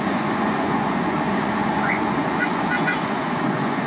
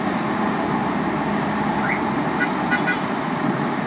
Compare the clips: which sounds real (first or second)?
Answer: second